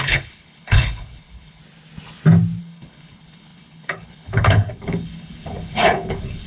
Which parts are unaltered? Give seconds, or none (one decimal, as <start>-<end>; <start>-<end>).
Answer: 1.6-2.6